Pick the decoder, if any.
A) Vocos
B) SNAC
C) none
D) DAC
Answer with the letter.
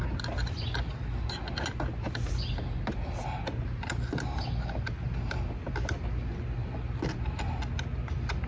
C